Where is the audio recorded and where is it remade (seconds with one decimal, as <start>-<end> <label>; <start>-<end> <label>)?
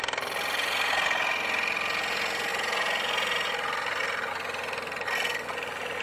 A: 0.0-6.0 recorded